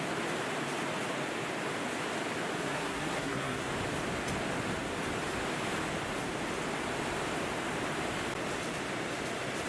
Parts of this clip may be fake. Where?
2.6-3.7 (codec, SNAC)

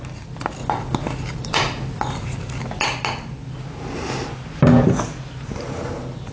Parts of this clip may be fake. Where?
none

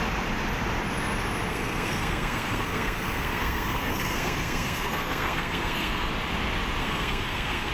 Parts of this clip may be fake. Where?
1.5-6.1 (codec, SNAC); 6.8-7.7

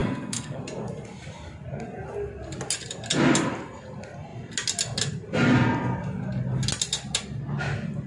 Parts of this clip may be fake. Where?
0.0-0.6 (codec, SNAC)

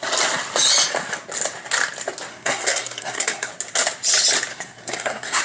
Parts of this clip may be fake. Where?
2.3-3.5 (codec, SNAC); 4.5-5.4

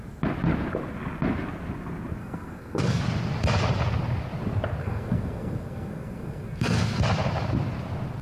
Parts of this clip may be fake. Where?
2.2-3.0 (codec, SNAC); 4.8-7.0

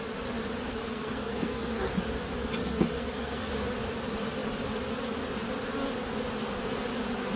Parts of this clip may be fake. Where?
0.7-1.9 (codec, SNAC); 2.6-3.5